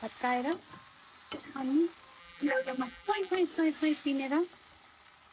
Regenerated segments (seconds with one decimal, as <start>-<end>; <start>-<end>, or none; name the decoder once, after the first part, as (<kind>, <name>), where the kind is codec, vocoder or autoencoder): 2.2-3.3 (vocoder, BigVGAN v2)